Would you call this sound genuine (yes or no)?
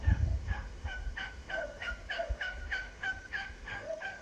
no